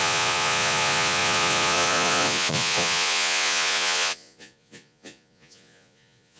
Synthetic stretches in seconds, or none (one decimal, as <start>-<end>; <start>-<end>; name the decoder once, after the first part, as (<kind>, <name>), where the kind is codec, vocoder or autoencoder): 0.0-6.4 (vocoder, Vocos)